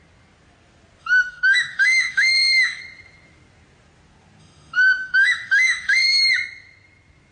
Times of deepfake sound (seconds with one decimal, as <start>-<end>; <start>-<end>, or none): 1.0-2.8; 4.4-6.2